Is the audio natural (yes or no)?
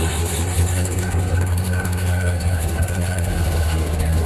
no